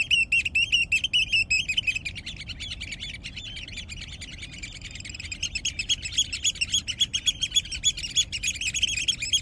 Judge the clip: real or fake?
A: real